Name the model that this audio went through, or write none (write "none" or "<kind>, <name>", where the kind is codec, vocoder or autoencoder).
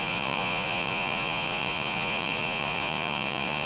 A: vocoder, Vocos